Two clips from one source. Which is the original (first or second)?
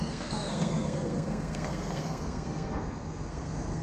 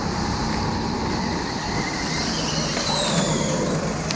second